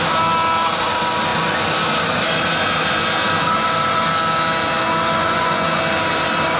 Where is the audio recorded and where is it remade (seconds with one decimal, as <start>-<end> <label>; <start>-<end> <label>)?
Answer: 0.0-5.2 recorded; 5.2-5.8 remade; 5.8-6.6 recorded